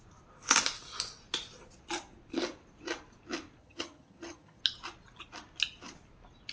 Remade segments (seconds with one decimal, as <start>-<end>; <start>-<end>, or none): 3.6-4.6